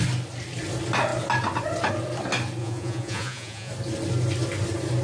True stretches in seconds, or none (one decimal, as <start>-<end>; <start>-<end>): 0.0-2.6; 3.7-5.0